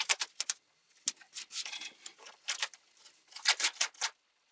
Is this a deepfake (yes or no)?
no